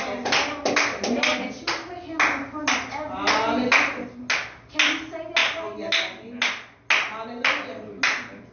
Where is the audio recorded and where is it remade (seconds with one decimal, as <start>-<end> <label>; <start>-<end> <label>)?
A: 0.0-8.5 recorded